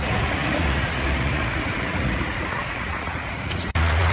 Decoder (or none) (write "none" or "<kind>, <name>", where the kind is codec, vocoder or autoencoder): vocoder, Vocos